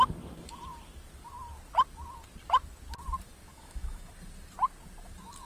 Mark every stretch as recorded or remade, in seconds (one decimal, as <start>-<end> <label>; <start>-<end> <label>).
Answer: 0.0-3.5 recorded; 3.5-4.1 remade; 4.1-5.5 recorded